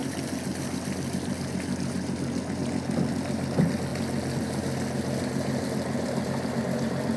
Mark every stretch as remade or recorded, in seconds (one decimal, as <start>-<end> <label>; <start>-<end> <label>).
0.0-7.2 recorded